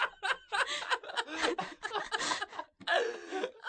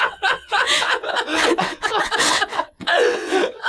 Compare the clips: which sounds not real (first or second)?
second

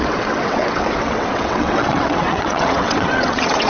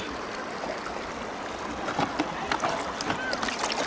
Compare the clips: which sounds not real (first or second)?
first